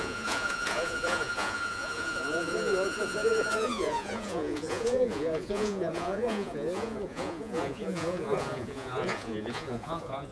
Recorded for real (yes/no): no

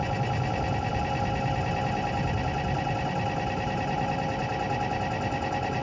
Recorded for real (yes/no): yes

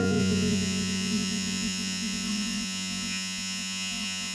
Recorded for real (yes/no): no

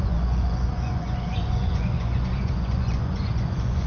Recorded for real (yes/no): no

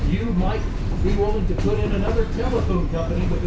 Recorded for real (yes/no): yes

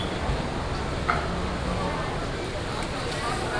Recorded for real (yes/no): yes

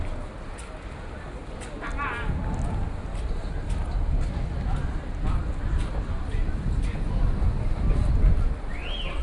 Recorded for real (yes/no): yes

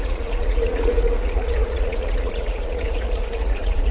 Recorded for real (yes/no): no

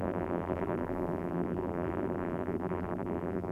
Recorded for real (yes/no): no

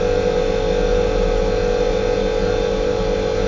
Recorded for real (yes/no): yes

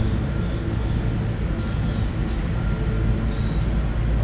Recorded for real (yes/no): yes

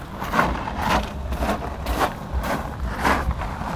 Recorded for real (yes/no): no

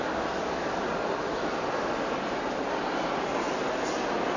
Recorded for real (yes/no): yes